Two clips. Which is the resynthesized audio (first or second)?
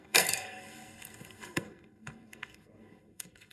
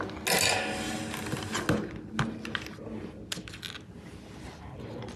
first